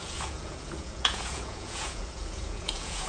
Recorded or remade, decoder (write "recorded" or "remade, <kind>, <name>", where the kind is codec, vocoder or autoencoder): remade, vocoder, Vocos